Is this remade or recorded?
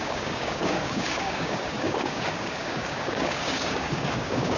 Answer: remade